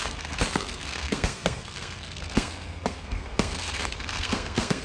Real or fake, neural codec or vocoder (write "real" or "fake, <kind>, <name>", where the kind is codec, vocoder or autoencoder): fake, codec, SNAC